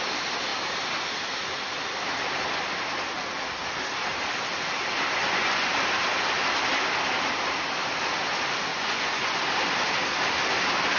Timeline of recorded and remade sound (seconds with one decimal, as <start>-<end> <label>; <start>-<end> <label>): 0.0-5.2 recorded; 5.2-5.7 remade; 5.7-8.7 recorded; 8.7-9.4 remade; 9.4-11.0 recorded